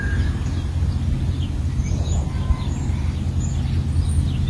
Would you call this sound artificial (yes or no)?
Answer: no